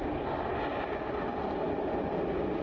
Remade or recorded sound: recorded